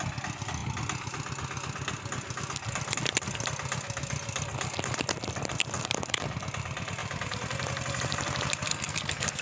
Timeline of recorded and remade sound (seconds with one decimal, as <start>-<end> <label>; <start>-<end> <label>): 0.0-8.7 recorded; 8.7-9.4 remade